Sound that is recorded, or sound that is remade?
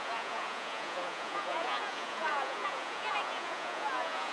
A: remade